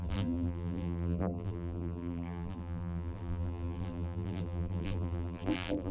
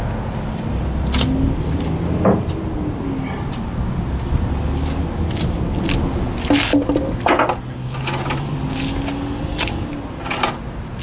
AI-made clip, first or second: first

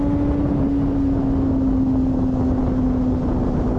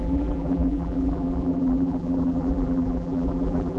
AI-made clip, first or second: second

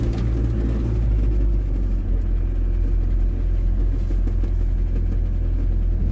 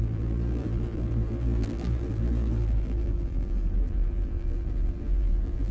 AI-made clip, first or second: second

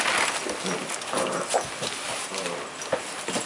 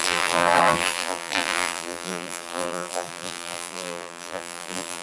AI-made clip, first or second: second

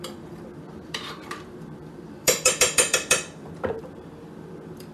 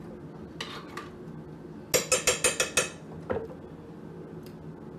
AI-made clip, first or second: first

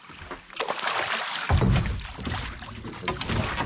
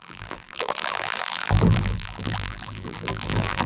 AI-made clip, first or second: second